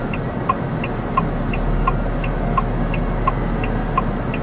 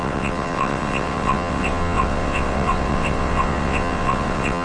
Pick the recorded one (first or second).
first